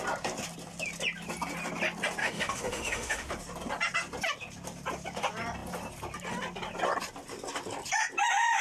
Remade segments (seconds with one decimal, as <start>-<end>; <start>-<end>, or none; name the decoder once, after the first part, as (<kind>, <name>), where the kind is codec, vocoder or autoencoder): 2.2-3.3 (autoencoder, DAC-VAE)